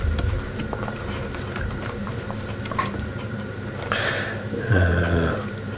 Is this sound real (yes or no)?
no